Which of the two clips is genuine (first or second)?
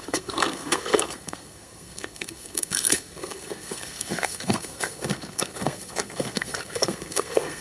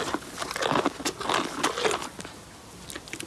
second